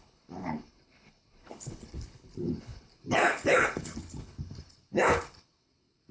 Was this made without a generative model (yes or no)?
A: no